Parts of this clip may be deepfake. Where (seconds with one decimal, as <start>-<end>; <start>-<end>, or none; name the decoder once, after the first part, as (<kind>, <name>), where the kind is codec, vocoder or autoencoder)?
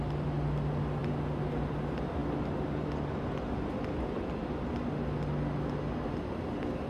none